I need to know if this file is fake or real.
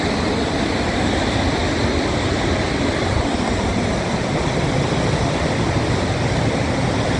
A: real